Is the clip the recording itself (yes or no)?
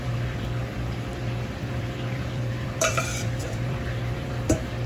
no